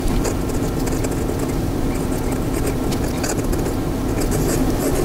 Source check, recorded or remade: recorded